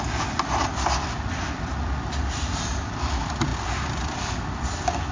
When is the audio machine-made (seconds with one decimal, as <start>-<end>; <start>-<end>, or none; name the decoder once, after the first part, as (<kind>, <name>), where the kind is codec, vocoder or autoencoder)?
3.5-4.0 (vocoder, BigVGAN v2)